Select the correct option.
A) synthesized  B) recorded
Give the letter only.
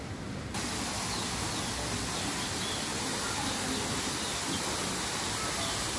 B